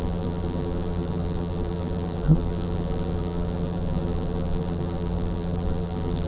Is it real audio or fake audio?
fake